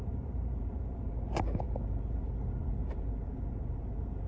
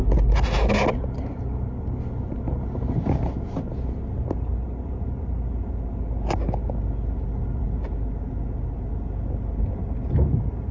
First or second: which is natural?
second